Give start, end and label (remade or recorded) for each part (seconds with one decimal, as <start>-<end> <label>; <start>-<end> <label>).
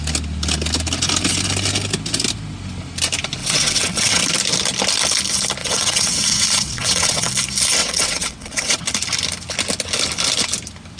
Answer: 0.0-3.4 recorded; 3.4-4.2 remade; 4.2-5.6 recorded; 5.6-7.3 remade; 7.3-7.8 recorded; 7.8-8.8 remade; 8.8-11.0 recorded